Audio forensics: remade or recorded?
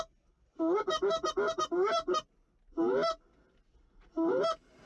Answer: recorded